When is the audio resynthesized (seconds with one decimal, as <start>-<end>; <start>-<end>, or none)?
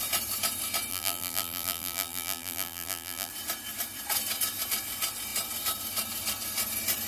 0.9-3.3